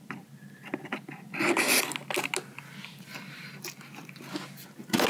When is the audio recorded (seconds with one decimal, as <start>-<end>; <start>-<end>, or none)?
0.0-5.1